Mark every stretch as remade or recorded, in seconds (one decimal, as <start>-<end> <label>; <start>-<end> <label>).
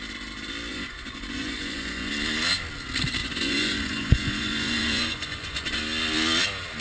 0.0-0.7 recorded; 0.7-2.1 remade; 2.1-3.2 recorded; 3.2-5.8 remade; 5.8-6.8 recorded